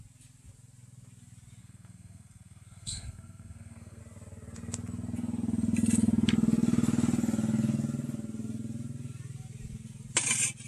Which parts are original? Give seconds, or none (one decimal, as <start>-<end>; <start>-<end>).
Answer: 0.0-1.6; 4.0-10.7